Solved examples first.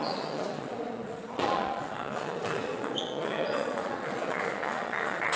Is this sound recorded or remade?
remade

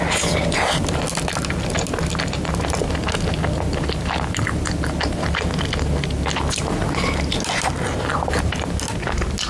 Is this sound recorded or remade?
recorded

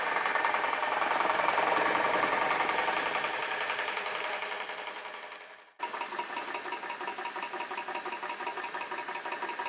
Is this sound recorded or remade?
recorded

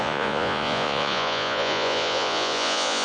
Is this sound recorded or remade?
remade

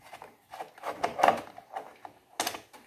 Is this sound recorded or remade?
recorded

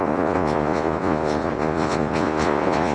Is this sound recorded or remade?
remade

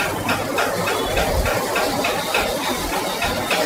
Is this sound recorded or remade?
recorded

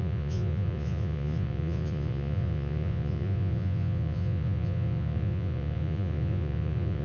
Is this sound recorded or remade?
remade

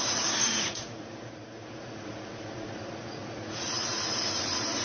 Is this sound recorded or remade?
remade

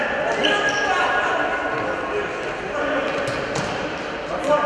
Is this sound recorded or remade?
recorded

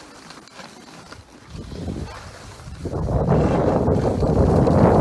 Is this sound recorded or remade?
recorded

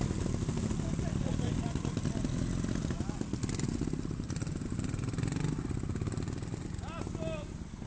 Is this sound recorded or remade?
recorded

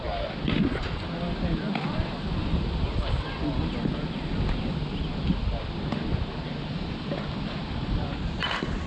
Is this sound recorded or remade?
recorded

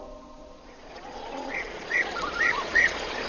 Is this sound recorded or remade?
remade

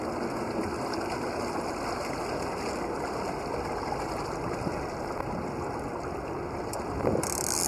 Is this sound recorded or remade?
recorded